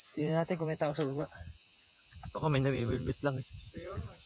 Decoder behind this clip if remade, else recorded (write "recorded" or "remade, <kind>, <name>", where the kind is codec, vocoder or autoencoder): remade, vocoder, Vocos